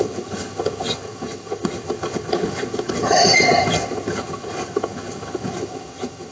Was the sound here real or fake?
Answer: fake